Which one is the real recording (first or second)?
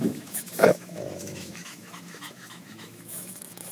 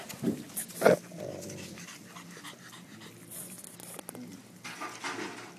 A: second